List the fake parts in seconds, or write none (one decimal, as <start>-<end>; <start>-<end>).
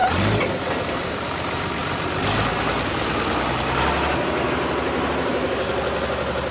none